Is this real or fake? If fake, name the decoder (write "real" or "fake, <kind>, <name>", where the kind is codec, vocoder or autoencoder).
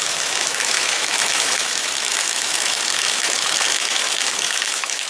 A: fake, autoencoder, DAC-VAE